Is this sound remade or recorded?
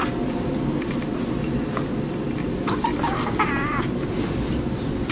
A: recorded